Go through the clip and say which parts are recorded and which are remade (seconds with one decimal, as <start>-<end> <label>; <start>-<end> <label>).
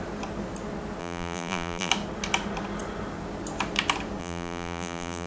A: 0.0-1.0 recorded; 1.0-1.9 remade; 1.9-4.2 recorded; 4.2-5.3 remade